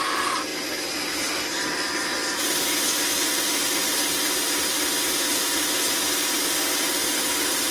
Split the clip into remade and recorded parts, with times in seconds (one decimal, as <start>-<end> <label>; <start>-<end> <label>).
0.0-7.7 recorded